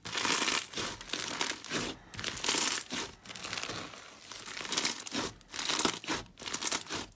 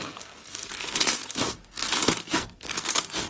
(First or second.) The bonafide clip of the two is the first